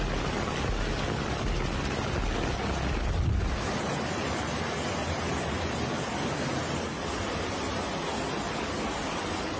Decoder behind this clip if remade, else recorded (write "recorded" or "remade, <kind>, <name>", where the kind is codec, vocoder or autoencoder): recorded